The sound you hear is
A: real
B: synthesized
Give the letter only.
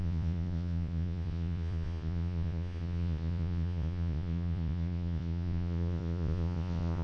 B